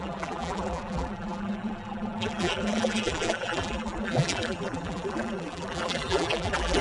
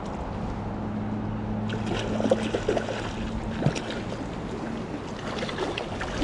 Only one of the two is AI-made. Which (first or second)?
first